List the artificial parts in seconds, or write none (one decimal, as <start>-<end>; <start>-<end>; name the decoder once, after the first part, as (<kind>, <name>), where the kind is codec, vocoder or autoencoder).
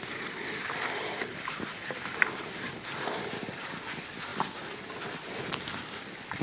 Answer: none